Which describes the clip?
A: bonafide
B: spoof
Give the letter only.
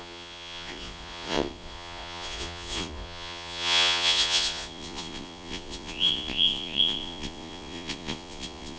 B